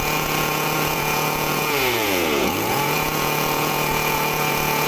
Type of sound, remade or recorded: remade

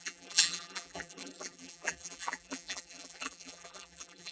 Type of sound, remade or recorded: remade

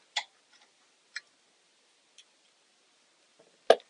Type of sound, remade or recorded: recorded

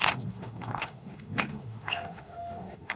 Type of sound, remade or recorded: remade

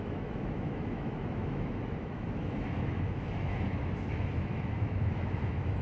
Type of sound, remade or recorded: remade